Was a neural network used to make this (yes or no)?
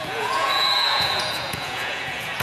yes